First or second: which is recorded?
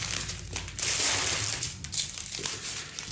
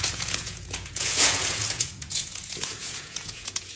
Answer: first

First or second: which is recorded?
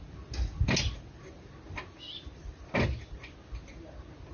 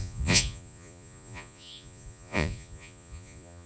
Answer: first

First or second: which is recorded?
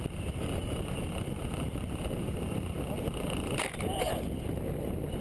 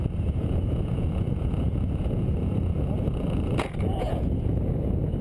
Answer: first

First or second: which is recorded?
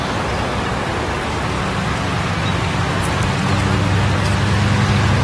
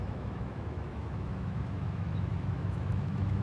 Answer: first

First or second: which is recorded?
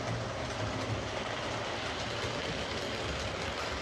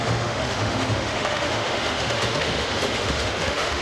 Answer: first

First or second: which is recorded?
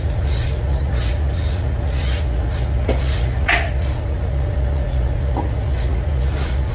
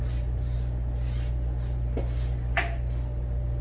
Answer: second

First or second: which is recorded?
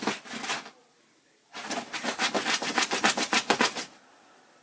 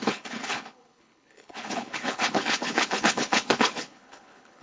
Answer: first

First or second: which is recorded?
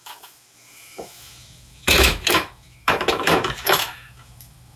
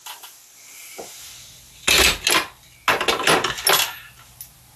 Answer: second